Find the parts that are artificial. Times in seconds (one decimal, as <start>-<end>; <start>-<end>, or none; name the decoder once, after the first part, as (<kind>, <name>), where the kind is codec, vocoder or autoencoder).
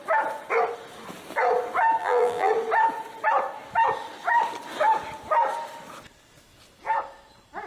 2.0-2.5 (vocoder, BigVGAN v2)